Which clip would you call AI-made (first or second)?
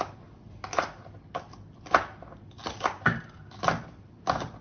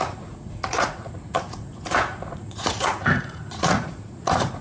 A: second